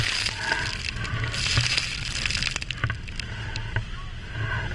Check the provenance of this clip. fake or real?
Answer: real